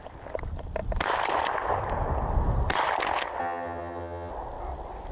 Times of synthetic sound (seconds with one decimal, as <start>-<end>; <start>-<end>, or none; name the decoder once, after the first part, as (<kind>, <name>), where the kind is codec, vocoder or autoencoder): 3.4-4.3 (vocoder, HiFi-GAN)